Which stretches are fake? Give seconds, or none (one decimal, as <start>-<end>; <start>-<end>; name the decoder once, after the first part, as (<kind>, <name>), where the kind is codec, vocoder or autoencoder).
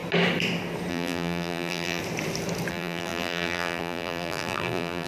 0.9-2.0 (vocoder, BigVGAN v2); 2.7-5.1